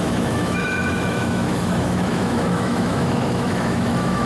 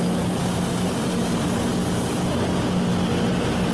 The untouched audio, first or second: second